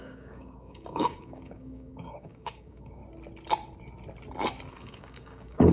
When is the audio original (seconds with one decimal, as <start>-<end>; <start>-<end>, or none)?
3.0-4.7